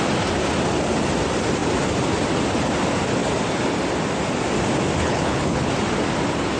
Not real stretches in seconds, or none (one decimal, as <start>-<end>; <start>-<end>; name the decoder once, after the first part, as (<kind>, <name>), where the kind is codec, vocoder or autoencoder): 5.0-5.7 (codec, HILCodec)